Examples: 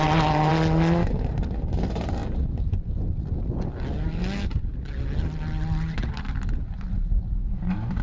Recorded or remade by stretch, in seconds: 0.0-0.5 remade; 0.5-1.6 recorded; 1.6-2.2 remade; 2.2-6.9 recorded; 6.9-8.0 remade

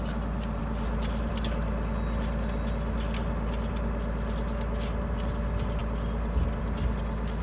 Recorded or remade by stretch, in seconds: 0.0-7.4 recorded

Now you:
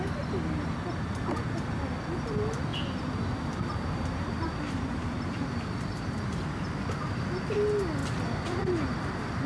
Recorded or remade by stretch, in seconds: 0.0-2.7 recorded; 2.7-7.4 remade; 7.4-8.0 recorded; 8.0-9.5 remade

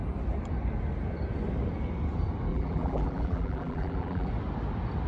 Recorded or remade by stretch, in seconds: 0.0-2.5 recorded; 2.5-4.3 remade; 4.3-5.1 recorded